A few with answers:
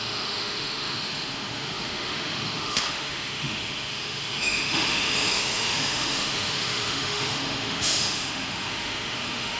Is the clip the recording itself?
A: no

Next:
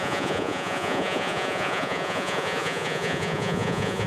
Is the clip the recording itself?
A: no